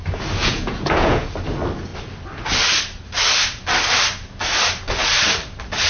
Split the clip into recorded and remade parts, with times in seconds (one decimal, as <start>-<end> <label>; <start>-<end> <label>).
0.0-0.4 recorded; 0.4-1.3 remade; 1.3-5.9 recorded